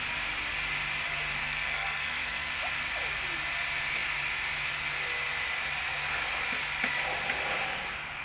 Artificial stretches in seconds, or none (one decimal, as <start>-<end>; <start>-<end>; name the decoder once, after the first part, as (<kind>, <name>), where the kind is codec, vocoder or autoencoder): 1.4-2.5 (codec, SNAC)